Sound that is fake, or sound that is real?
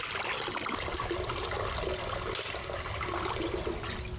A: real